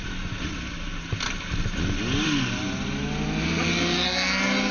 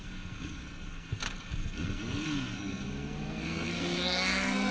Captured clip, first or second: first